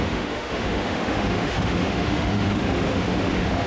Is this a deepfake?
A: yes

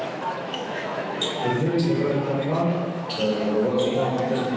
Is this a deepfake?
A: yes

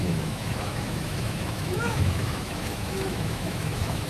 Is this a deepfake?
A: yes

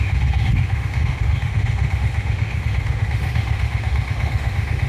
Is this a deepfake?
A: yes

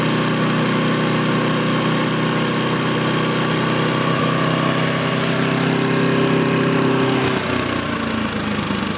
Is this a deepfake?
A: no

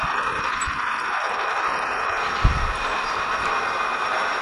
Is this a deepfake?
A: no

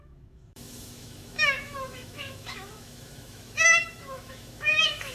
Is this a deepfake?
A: yes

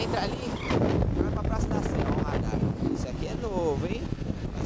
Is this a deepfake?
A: no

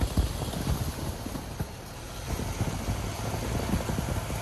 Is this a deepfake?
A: no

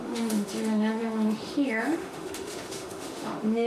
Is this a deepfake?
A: yes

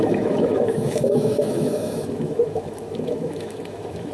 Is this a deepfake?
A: yes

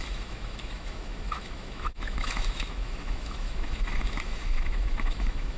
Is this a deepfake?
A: yes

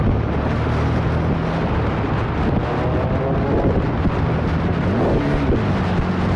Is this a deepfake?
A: no